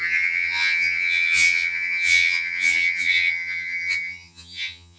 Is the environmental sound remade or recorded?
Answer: remade